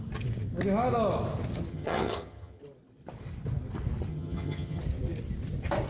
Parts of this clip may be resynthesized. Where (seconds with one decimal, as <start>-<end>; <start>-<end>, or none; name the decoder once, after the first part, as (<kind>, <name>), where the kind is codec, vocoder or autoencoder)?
1.7-2.6 (vocoder, HiFi-GAN); 4.1-4.8